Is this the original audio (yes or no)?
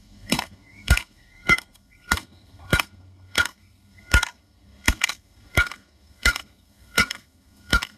no